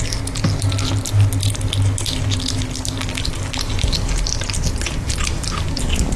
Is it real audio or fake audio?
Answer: real